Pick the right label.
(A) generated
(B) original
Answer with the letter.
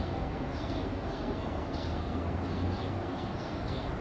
A